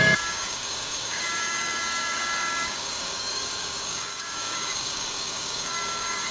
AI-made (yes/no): yes